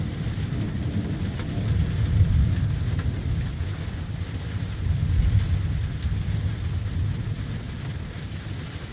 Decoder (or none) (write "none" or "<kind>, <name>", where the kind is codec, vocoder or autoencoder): none